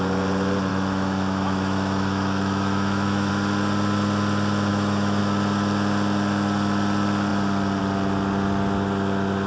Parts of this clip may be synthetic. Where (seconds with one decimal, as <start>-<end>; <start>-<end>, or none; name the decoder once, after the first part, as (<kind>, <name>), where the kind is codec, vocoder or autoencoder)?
0.7-3.3 (autoencoder, DAC-VAE); 4.7-5.2